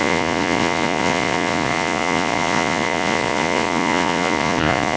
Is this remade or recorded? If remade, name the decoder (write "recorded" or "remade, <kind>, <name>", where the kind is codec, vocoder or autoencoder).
remade, vocoder, Vocos